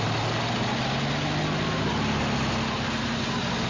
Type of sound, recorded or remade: recorded